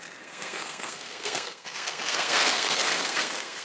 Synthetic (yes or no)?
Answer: yes